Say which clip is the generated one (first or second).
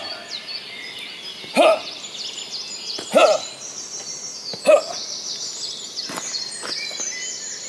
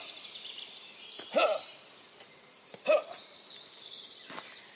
second